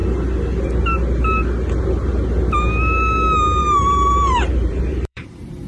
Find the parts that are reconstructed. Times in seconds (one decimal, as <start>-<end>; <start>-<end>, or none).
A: 3.6-5.7